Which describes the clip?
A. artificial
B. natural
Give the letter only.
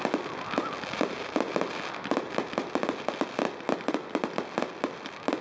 B